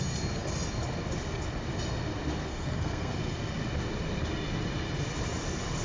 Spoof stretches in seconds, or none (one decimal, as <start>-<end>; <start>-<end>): 2.5-3.1

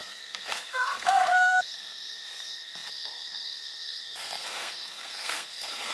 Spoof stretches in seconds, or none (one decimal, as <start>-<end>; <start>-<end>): 0.0-5.9

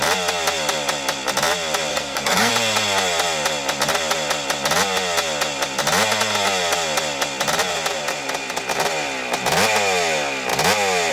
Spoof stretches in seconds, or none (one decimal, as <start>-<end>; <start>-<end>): 1.9-2.5

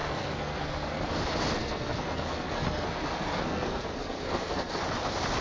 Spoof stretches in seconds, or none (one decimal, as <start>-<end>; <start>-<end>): 0.0-1.0; 1.6-4.8

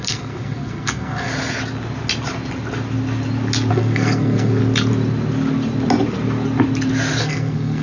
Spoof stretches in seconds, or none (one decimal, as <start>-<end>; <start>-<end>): 0.0-1.3; 3.7-4.6; 7.2-7.8

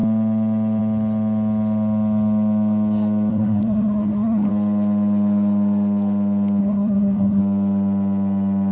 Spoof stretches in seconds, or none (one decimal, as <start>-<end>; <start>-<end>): 3.3-4.5; 6.6-7.4

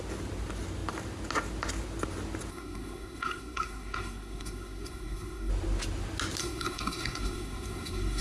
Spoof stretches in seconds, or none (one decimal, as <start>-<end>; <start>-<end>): 2.5-5.5; 6.4-8.2

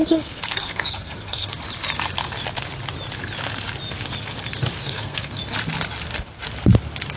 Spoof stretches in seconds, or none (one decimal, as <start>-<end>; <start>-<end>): 0.0-1.6; 4.8-5.4